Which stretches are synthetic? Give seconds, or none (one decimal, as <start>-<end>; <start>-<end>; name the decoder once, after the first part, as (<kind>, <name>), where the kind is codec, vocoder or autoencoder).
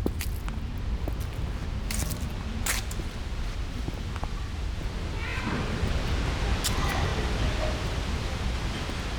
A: 5.3-5.9 (vocoder, BigVGAN v2)